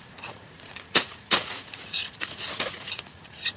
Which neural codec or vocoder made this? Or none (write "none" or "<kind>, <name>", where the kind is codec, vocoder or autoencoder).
vocoder, Vocos